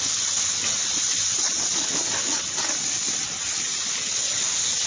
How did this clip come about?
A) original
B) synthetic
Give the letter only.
A